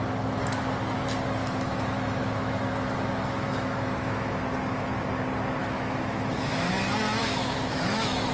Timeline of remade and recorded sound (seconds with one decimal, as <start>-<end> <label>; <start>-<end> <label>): 0.0-1.4 recorded; 1.4-4.4 remade; 4.4-5.6 recorded; 5.6-6.7 remade; 6.7-7.2 recorded; 7.2-8.3 remade